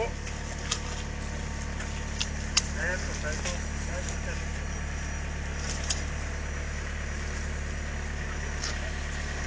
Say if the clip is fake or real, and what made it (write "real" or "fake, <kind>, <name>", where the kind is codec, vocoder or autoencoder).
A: real